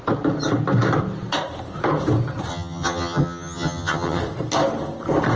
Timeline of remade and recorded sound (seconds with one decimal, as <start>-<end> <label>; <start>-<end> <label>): 0.0-2.5 recorded; 2.5-4.2 remade; 4.2-5.4 recorded